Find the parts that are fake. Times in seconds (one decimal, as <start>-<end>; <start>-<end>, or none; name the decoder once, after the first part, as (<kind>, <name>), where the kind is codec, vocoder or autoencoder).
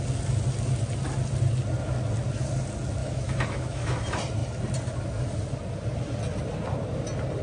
3.0-3.9 (autoencoder, DAC-VAE)